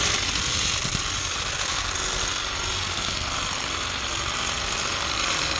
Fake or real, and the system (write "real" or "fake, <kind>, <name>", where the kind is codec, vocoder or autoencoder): real